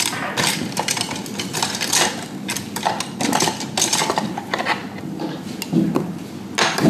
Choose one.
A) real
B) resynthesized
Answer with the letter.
A